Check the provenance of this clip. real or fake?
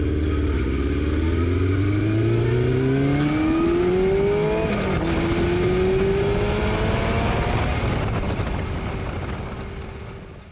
real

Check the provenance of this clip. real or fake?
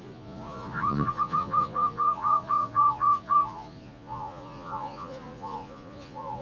fake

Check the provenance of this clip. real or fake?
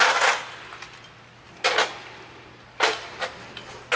real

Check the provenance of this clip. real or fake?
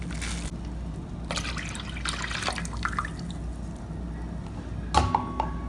real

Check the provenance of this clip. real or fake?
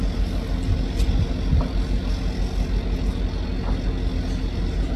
real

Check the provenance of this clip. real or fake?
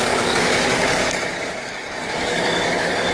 fake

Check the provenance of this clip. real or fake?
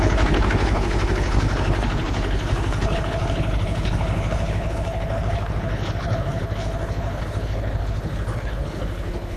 fake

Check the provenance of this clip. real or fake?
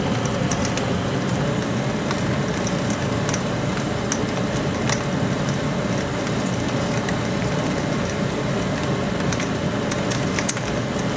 real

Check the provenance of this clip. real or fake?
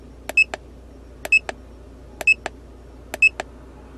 real